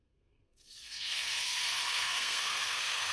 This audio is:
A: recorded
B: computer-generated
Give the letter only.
B